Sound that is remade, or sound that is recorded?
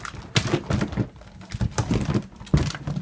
recorded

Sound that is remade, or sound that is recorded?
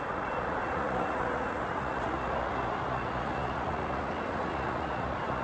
remade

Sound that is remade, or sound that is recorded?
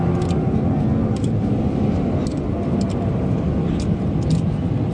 recorded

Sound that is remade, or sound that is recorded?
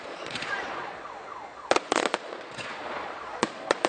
remade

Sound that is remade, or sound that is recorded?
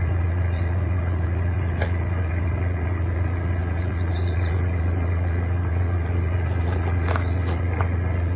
remade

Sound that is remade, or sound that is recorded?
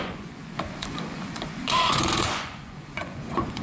remade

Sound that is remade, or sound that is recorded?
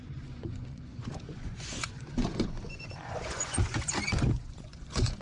remade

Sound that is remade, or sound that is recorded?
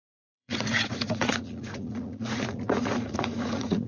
remade